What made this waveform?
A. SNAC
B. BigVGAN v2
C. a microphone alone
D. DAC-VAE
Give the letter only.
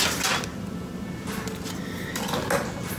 C